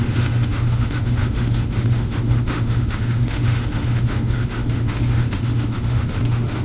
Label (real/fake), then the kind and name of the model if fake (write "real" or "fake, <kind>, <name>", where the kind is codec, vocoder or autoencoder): fake, autoencoder, DAC-VAE